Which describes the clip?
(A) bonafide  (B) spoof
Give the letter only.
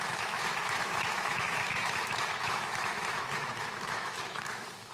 B